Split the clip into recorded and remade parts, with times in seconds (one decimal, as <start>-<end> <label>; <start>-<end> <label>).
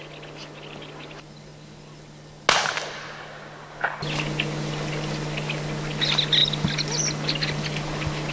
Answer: 0.0-8.3 recorded